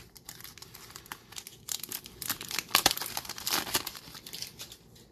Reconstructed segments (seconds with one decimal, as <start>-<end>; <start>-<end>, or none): 0.0-5.1